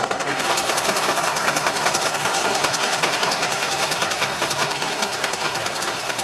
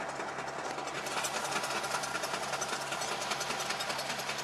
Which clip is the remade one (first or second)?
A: first